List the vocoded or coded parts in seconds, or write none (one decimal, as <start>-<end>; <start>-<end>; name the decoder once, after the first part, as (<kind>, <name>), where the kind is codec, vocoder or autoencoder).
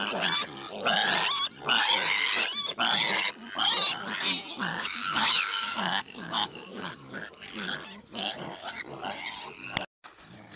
4.7-6.9 (codec, DAC); 8.1-8.7